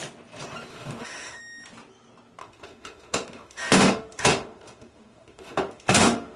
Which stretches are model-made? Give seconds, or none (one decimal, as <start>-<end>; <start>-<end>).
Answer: 0.7-1.4; 2.4-6.4